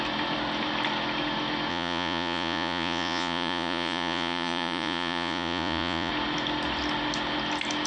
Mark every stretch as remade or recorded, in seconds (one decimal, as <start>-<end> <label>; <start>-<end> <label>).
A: 0.0-1.7 recorded; 1.7-6.1 remade; 6.1-7.9 recorded